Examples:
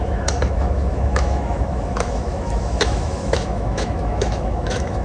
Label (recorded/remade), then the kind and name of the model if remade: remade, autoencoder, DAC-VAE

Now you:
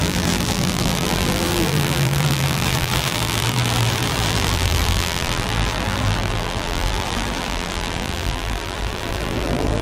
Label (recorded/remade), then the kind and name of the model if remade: remade, vocoder, BigVGAN v2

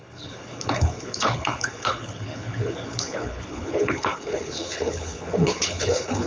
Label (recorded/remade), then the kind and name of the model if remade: remade, codec, HILCodec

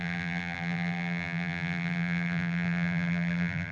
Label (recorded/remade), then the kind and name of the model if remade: remade, vocoder, BigVGAN v2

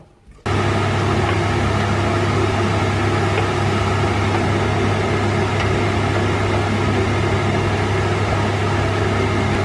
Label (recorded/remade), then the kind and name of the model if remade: recorded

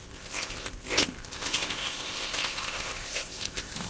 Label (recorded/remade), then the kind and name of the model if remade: remade, codec, ZipCodec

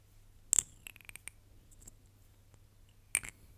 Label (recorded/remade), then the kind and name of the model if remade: recorded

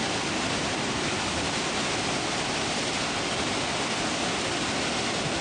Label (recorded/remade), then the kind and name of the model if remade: recorded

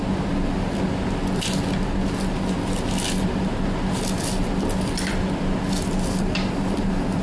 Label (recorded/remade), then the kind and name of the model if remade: recorded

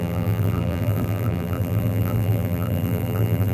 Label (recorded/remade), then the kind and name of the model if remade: remade, vocoder, BigVGAN v2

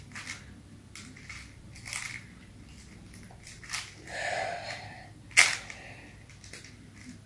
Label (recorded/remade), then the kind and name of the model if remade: recorded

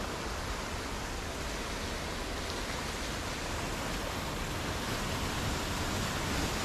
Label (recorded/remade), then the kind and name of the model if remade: recorded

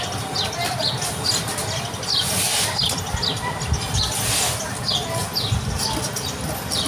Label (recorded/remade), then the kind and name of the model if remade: recorded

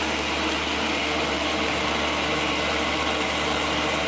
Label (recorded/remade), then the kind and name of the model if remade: recorded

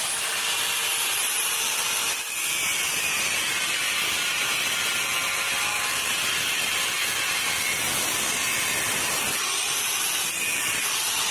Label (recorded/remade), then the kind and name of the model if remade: recorded